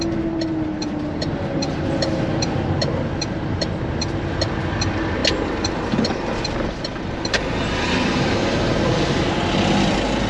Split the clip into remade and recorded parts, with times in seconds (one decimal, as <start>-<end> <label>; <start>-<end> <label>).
0.0-10.3 recorded